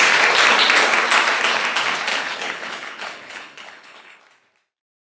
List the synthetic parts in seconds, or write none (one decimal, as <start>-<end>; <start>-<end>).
2.1-4.2